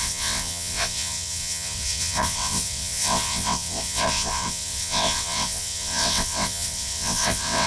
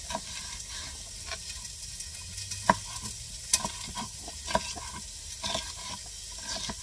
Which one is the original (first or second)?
second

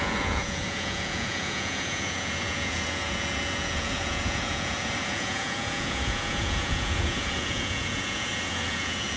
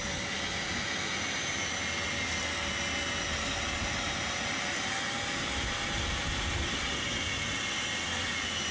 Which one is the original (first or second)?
second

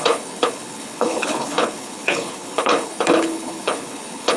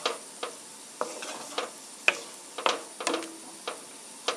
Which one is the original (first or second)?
second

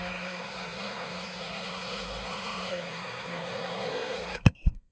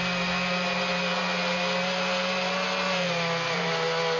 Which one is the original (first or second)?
second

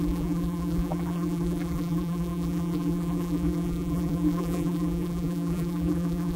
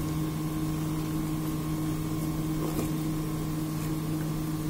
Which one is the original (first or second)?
second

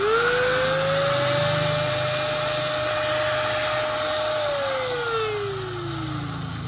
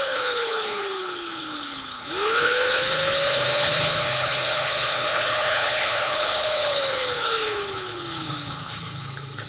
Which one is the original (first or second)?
first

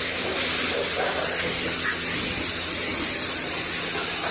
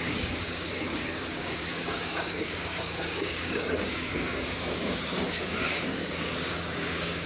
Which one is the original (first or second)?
first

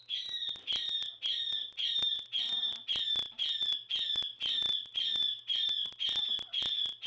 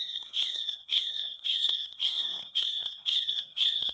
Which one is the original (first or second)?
first